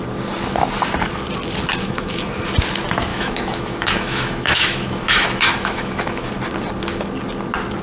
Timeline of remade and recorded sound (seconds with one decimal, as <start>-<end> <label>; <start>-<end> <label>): 0.0-1.8 recorded; 1.8-2.4 remade; 2.4-3.1 recorded; 3.1-6.3 remade; 6.3-7.8 recorded